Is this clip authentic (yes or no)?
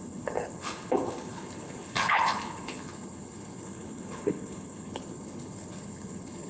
no